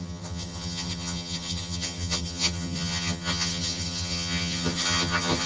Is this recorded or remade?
remade